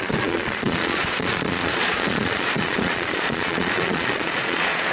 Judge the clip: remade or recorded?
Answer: remade